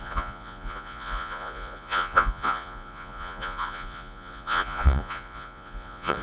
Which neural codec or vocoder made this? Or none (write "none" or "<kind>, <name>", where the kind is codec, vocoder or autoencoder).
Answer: vocoder, Vocos